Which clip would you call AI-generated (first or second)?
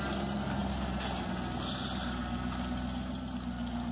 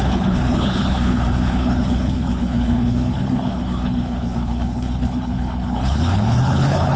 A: second